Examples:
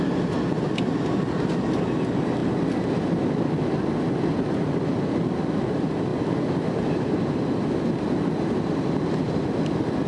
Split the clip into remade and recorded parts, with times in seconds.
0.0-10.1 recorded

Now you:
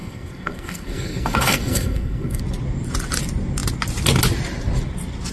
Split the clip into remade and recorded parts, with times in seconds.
0.0-2.4 remade; 2.4-5.3 recorded

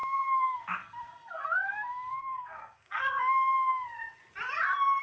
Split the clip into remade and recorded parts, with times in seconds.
0.0-4.2 remade; 4.2-5.0 recorded

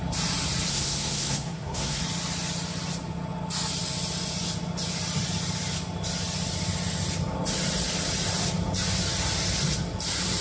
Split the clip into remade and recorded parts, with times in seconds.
0.0-0.7 recorded; 0.7-2.0 remade; 2.0-10.4 recorded

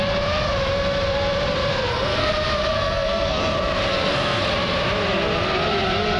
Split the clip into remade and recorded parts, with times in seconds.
0.0-1.7 recorded; 1.7-2.3 remade; 2.3-2.7 recorded; 2.7-3.4 remade; 3.4-3.9 recorded; 3.9-4.4 remade; 4.4-6.2 recorded

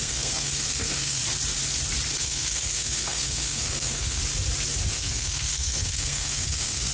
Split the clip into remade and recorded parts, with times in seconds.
0.0-1.2 remade; 1.2-2.2 recorded; 2.2-4.2 remade; 4.2-4.9 recorded; 4.9-6.9 remade